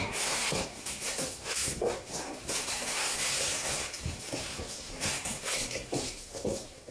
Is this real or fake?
fake